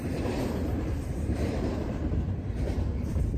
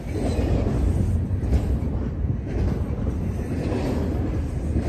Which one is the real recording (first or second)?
second